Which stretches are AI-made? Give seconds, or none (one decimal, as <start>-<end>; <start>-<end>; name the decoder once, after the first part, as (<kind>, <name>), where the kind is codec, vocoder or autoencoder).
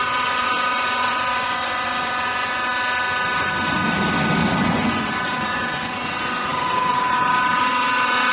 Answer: 0.0-2.7 (vocoder, Vocos); 4.6-8.3